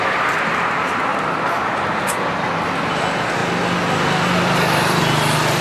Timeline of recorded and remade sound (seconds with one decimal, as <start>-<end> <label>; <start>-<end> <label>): 0.0-1.1 recorded; 1.1-1.7 remade; 1.7-5.6 recorded